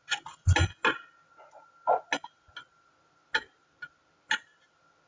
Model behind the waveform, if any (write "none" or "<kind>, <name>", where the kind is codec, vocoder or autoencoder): none